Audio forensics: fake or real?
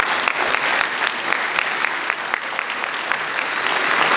real